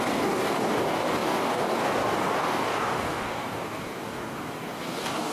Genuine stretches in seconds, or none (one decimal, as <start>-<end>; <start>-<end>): none